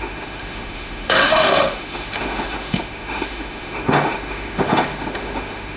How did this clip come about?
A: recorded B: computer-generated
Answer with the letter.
B